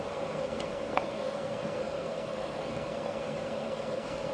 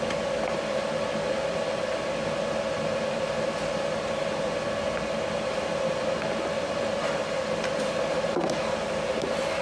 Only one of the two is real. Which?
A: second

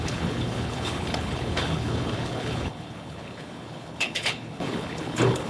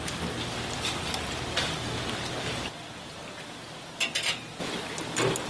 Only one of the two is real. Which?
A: second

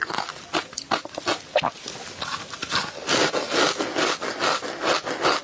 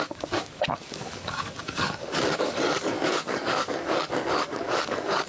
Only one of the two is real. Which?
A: first